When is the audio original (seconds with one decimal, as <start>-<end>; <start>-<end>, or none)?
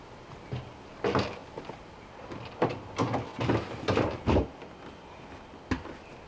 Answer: 0.0-1.4; 2.0-6.3